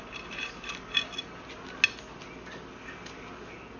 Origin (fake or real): real